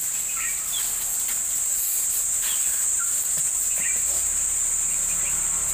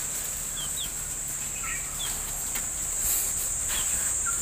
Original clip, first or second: second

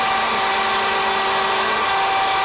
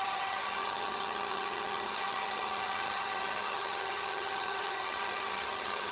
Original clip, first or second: first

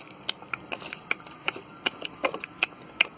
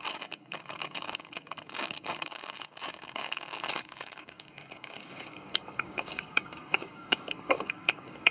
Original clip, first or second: first